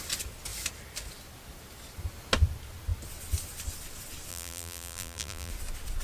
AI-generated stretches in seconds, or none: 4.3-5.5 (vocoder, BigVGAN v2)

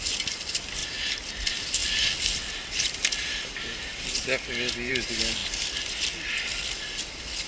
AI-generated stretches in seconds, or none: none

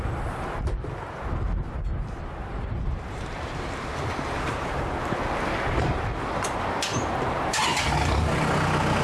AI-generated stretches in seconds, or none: 2.4-5.2 (vocoder, BigVGAN v2); 6.9-7.6

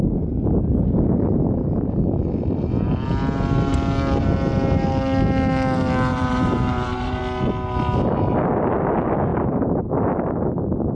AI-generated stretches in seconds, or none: 6.1-7.2 (vocoder, BigVGAN v2); 9.3-10.1

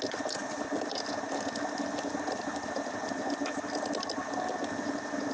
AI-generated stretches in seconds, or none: 0.4-3.1 (vocoder, BigVGAN v2)

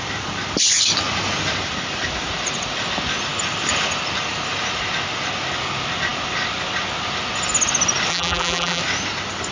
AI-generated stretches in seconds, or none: 8.1-8.8 (vocoder, BigVGAN v2)